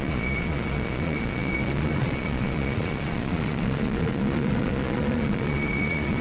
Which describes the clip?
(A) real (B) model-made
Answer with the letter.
B